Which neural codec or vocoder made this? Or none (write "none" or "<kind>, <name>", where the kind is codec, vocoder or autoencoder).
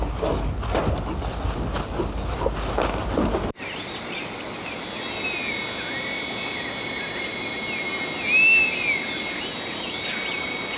none